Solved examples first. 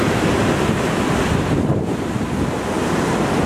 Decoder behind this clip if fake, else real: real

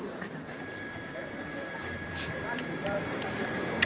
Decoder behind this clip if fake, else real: fake, vocoder, BigVGAN v2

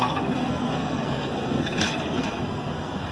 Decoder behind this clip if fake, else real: fake, codec, SNAC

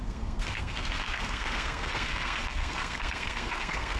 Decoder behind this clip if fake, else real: fake, codec, SNAC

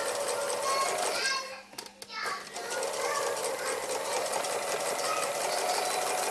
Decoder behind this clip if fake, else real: real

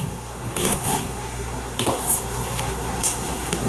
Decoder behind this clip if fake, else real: fake, codec, SNAC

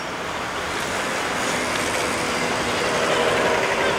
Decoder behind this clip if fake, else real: real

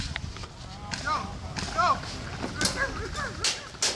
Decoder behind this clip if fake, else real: real